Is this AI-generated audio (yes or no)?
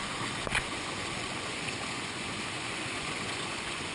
yes